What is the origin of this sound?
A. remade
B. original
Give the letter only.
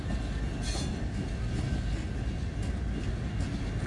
B